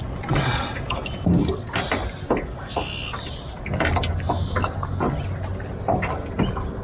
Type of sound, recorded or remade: recorded